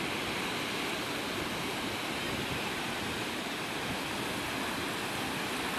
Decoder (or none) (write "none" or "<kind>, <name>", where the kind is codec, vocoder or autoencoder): none